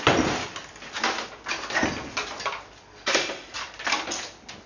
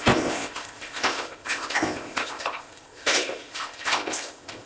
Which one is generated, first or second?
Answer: second